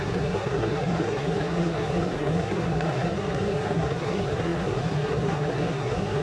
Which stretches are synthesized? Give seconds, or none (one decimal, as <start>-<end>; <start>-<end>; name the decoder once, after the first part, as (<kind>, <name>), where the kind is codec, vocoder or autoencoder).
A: 0.0-6.2 (codec, SNAC)